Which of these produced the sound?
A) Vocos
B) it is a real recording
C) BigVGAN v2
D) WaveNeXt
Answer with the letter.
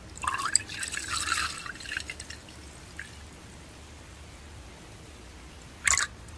B